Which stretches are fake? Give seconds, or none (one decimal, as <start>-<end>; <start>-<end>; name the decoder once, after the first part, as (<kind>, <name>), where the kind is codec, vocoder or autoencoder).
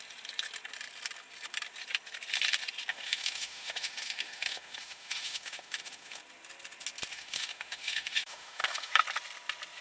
2.9-6.2 (autoencoder, DAC-VAE); 7.1-8.9